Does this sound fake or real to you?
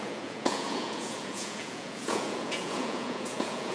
fake